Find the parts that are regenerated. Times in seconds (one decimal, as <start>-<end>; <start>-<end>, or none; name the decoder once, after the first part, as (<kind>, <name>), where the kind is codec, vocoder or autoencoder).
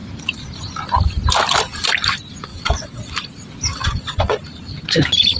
2.5-3.1 (vocoder, WaveNeXt); 3.7-4.4